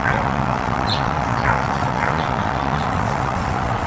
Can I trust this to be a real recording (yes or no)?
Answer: no